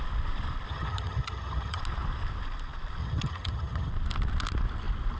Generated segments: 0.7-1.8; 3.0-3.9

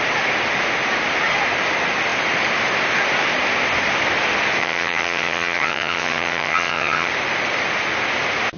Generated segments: 4.6-7.1